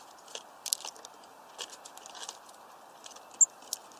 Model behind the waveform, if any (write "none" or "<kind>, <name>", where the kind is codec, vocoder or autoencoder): none